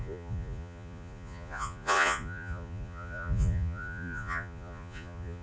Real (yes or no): no